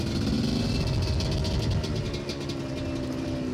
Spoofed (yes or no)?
no